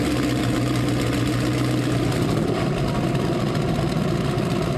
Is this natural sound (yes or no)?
yes